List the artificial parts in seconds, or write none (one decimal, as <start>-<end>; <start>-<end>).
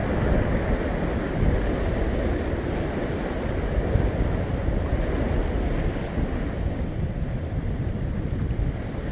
none